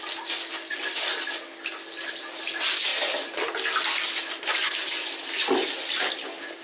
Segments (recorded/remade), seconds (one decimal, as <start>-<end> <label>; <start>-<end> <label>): 0.0-6.6 recorded